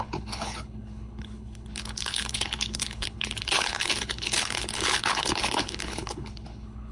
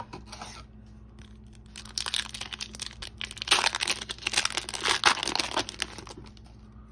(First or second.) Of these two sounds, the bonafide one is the second